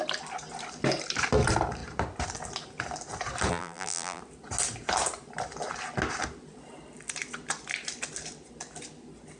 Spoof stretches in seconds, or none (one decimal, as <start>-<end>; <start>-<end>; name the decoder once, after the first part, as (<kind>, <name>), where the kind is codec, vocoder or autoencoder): 3.5-4.2 (vocoder, BigVGAN v2)